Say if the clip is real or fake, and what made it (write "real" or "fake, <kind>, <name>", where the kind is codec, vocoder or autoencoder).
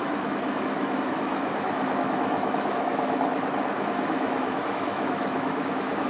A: fake, autoencoder, DAC-VAE